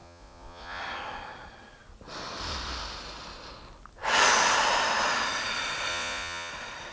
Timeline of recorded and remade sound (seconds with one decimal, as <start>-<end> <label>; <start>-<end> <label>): 0.0-0.8 remade; 0.8-5.9 recorded; 5.9-6.5 remade; 6.5-6.9 recorded